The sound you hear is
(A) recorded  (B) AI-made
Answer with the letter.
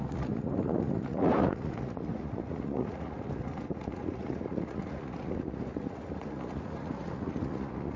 B